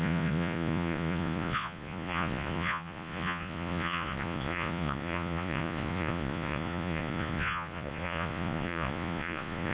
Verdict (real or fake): fake